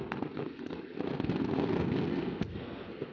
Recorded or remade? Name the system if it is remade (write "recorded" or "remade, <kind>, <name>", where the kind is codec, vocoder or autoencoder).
remade, codec, SNAC